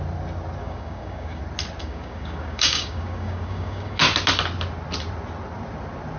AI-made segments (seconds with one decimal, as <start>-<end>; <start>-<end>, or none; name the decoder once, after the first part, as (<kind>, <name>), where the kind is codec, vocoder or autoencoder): 0.6-1.4 (codec, DAC); 1.8-4.0